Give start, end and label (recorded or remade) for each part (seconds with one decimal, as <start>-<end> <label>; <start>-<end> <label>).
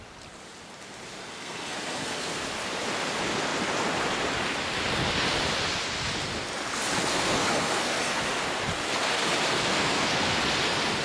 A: 0.0-1.2 recorded; 1.2-2.4 remade; 2.4-7.1 recorded; 7.1-8.2 remade; 8.2-9.7 recorded; 9.7-10.4 remade; 10.4-11.0 recorded